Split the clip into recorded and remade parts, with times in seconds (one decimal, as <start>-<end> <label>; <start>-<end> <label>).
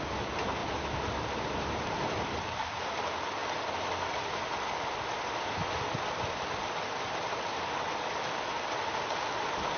0.0-0.6 recorded; 0.6-2.8 remade; 2.8-9.8 recorded